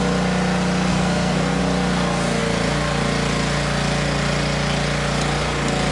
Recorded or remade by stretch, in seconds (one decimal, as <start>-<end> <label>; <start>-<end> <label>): 0.0-0.9 recorded; 0.9-1.6 remade; 1.6-5.9 recorded